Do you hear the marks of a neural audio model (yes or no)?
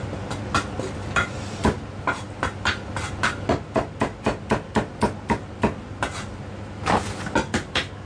no